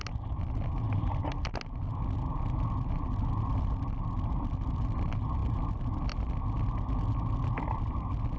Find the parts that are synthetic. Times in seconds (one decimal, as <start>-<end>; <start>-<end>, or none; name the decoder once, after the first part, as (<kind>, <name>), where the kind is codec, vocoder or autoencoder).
none